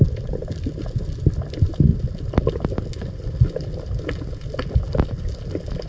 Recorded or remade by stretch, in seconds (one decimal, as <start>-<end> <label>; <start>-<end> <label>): 0.0-5.9 recorded